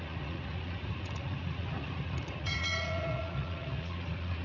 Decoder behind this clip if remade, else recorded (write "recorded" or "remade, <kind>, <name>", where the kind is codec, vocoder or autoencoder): remade, vocoder, Vocos